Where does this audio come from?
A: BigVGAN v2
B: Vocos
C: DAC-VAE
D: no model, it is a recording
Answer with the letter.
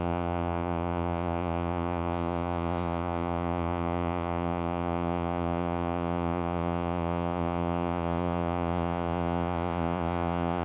B